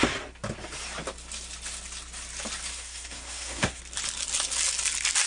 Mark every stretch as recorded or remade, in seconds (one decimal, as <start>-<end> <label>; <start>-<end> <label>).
0.0-2.7 recorded; 2.7-3.8 remade; 3.8-5.3 recorded